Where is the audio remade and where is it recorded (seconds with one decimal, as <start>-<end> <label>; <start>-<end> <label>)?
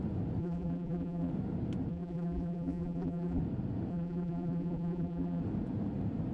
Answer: 0.0-0.4 recorded; 0.4-1.3 remade; 1.3-1.9 recorded; 1.9-3.4 remade; 3.4-3.9 recorded; 3.9-5.4 remade; 5.4-6.3 recorded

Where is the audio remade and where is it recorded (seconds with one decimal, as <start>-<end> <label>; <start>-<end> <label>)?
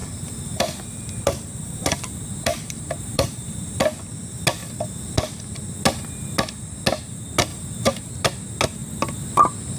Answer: 0.0-3.8 remade; 3.8-7.5 recorded; 7.5-8.1 remade; 8.1-9.8 recorded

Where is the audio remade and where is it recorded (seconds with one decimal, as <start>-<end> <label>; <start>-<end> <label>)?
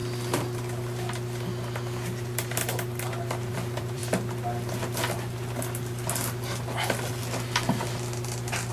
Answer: 0.0-3.5 recorded; 3.5-4.0 remade; 4.0-8.7 recorded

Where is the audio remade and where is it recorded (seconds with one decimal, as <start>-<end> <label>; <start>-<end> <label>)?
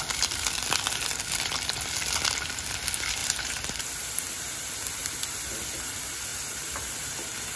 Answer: 0.0-3.2 recorded; 3.2-3.8 remade; 3.8-6.3 recorded; 6.3-6.9 remade; 6.9-7.6 recorded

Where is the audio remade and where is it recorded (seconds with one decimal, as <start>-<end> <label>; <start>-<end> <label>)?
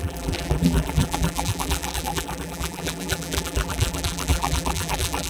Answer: 0.0-5.3 remade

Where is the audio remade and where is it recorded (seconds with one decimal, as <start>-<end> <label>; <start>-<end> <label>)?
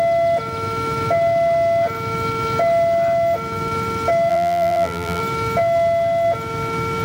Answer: 0.0-4.3 recorded; 4.3-5.2 remade; 5.2-7.0 recorded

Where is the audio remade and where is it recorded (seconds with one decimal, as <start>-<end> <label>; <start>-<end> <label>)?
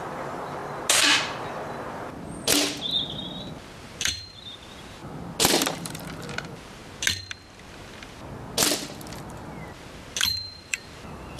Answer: 0.0-0.6 remade; 0.6-3.8 recorded; 3.8-5.0 remade; 5.0-5.6 recorded; 5.6-6.8 remade; 6.8-10.1 recorded; 10.1-11.4 remade